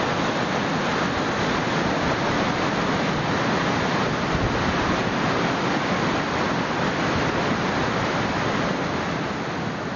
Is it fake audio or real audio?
real